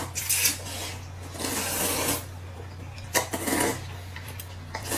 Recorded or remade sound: recorded